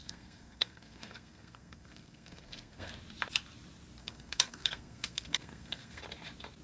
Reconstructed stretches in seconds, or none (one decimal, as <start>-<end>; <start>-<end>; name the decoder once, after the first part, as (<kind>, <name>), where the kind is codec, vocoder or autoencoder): 0.0-2.9 (codec, SNAC); 4.0-6.0